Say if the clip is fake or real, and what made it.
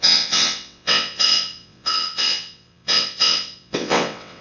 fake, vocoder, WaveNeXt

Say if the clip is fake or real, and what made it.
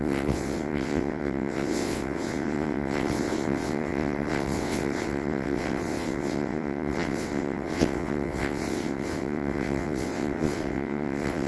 fake, vocoder, WaveNeXt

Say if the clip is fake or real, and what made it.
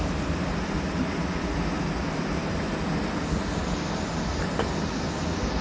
real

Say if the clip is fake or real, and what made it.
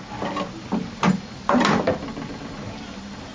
real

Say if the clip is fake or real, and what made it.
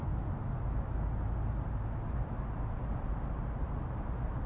real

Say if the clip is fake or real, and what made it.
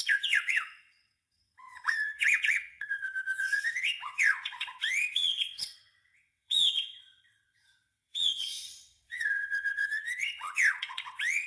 fake, vocoder, WaveNeXt